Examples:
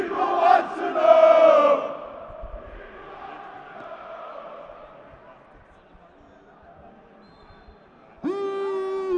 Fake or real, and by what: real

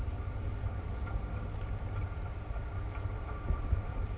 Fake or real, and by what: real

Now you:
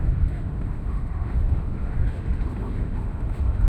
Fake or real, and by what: fake, autoencoder, DAC-VAE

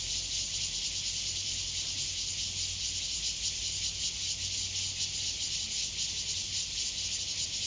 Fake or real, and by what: real